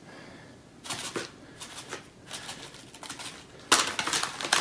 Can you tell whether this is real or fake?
real